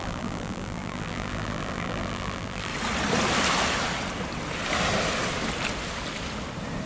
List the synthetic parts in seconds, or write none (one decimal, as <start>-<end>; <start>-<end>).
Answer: 0.0-2.7